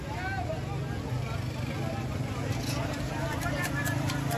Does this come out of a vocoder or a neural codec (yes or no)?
no